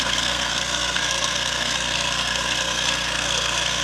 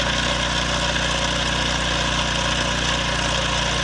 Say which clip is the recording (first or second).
second